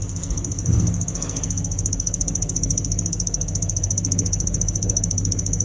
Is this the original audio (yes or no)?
no